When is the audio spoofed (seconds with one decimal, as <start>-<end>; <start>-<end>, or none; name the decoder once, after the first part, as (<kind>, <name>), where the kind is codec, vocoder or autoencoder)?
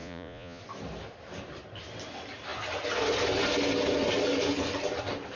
0.0-0.6 (vocoder, Vocos)